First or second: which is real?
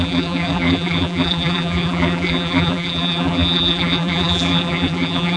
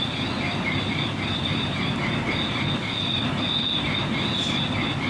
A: second